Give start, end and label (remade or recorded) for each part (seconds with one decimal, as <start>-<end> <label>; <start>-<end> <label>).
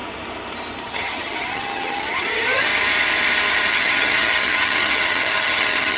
0.0-0.8 recorded; 0.8-2.7 remade; 2.7-3.7 recorded; 3.7-6.0 remade